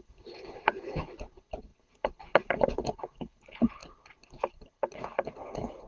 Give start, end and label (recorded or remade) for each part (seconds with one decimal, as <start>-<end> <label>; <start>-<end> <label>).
0.0-5.9 remade